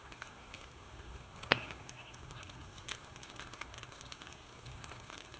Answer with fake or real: fake